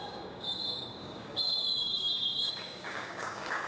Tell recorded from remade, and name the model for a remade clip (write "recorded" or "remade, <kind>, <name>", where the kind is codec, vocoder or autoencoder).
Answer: remade, codec, DAC